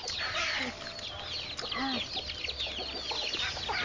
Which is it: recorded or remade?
recorded